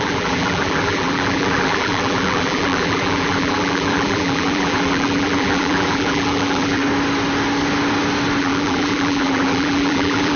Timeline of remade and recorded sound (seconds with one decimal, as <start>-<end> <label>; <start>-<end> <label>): 0.0-6.8 remade; 6.8-8.4 recorded; 8.4-10.4 remade